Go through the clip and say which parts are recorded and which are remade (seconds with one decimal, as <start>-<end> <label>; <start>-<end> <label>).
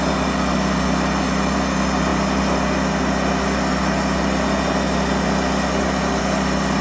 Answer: 0.0-6.8 recorded